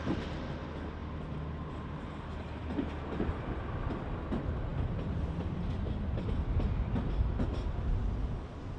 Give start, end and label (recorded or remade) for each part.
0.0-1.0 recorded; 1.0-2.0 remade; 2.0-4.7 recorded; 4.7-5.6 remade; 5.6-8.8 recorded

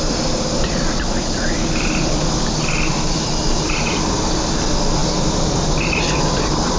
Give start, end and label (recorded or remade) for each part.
0.0-6.8 remade

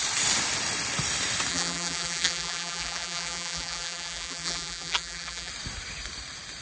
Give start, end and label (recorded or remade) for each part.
0.0-1.5 recorded; 1.5-5.5 remade; 5.5-6.6 recorded

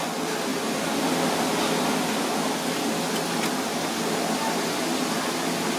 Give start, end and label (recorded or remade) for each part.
0.0-5.8 recorded

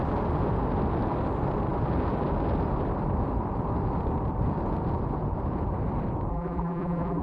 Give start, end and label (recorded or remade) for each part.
0.0-6.3 recorded; 6.3-7.2 remade

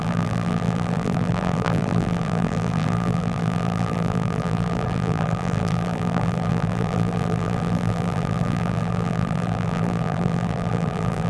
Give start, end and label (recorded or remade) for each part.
0.0-11.3 remade

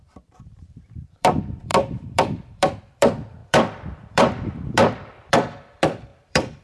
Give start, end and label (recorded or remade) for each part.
0.0-6.6 remade

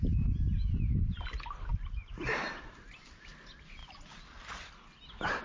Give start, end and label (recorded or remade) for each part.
0.0-1.7 recorded; 1.7-3.1 remade; 3.1-5.4 recorded